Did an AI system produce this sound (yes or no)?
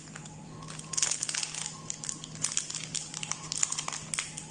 no